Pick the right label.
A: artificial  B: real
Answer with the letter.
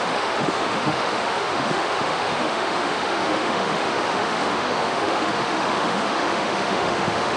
A